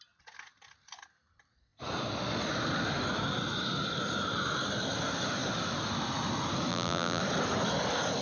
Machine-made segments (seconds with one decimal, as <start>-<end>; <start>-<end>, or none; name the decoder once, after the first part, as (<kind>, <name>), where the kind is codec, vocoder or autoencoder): 6.7-7.2 (vocoder, BigVGAN v2)